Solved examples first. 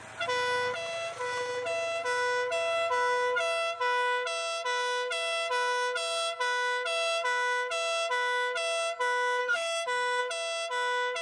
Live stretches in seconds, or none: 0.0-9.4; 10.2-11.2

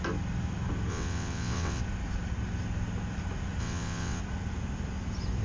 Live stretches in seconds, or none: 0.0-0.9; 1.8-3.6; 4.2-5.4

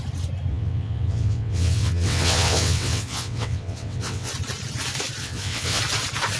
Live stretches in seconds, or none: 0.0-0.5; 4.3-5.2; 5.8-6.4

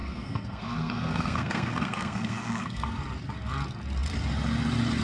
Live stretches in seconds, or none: 3.0-5.0